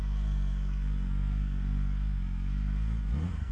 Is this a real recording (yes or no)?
no